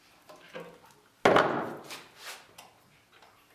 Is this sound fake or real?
real